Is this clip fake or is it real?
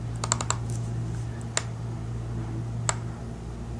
real